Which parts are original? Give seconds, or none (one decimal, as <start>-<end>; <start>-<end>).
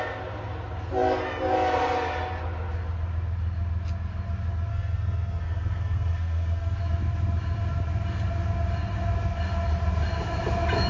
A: 0.0-4.7; 6.8-10.9